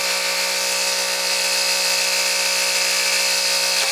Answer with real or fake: real